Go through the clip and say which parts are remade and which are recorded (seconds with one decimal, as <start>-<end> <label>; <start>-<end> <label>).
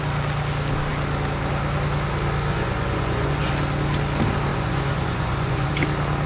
0.0-2.5 recorded; 2.5-3.5 remade; 3.5-4.5 recorded; 4.5-5.7 remade; 5.7-6.3 recorded